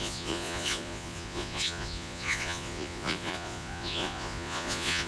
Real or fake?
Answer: fake